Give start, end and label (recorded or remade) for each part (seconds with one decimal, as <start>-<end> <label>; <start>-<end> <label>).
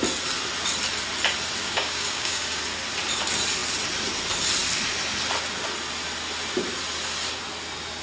0.0-1.6 recorded; 1.6-2.6 remade; 2.6-8.0 recorded